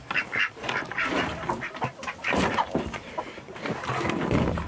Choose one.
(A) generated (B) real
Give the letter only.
B